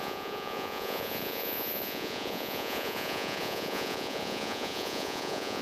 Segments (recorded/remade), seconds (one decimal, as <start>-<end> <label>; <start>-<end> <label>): 0.0-5.6 remade